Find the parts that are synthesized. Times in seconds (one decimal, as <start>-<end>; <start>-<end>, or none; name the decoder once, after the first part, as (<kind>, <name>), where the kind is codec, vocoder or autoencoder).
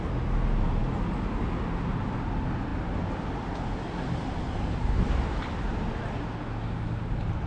none